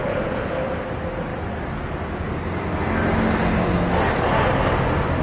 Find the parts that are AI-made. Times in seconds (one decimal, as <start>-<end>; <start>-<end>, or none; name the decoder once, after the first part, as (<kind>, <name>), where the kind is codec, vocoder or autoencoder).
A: 0.0-0.5 (vocoder, Vocos)